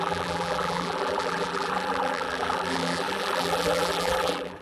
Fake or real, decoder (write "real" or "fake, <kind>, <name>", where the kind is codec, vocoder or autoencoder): fake, vocoder, BigVGAN v2